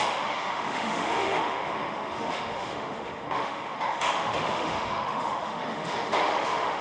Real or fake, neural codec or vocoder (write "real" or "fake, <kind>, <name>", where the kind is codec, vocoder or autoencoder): fake, autoencoder, DAC-VAE